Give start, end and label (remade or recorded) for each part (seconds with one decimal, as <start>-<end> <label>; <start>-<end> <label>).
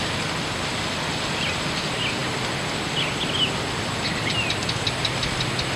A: 0.0-5.8 recorded